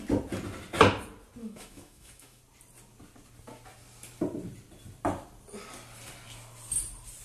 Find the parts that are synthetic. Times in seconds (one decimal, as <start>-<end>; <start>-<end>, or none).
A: 1.4-2.4